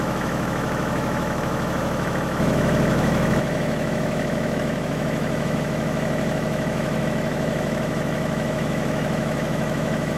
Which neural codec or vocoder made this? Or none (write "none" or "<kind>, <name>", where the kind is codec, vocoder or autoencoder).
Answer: autoencoder, DAC-VAE